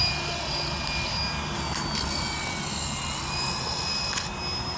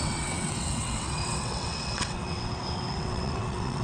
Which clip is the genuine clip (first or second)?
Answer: first